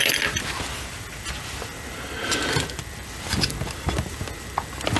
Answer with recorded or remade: recorded